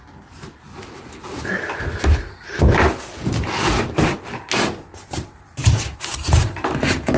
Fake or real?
real